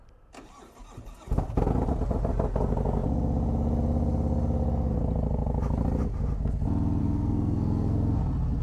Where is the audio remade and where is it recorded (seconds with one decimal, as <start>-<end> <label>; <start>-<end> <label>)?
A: 0.0-7.0 recorded; 7.0-8.2 remade; 8.2-8.6 recorded